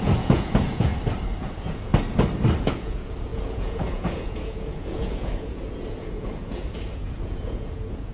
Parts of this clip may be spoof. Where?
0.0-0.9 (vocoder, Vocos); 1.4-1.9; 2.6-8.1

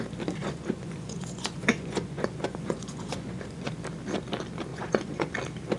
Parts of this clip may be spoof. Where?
0.4-3.7 (vocoder, Vocos); 4.7-5.3

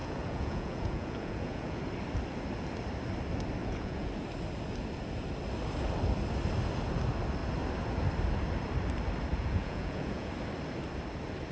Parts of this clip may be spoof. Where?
0.0-1.8 (vocoder, Vocos); 3.6-4.1; 9.3-10.3